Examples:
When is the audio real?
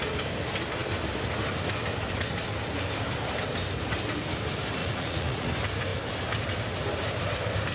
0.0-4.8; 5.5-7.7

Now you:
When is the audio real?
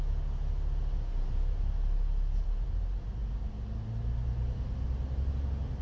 0.0-5.8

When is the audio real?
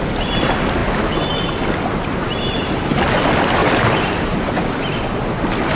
0.0-2.2; 2.8-3.6; 4.5-5.8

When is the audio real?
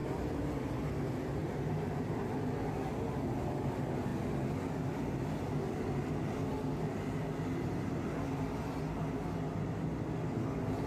0.7-1.4; 2.4-10.9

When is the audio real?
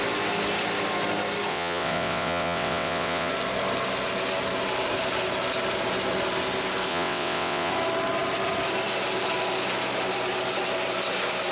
0.0-1.5; 3.3-6.9; 7.7-11.5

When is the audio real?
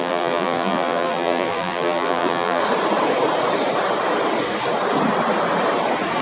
2.6-6.2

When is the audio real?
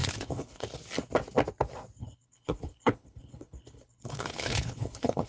0.8-2.0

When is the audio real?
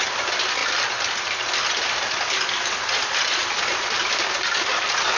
0.0-5.2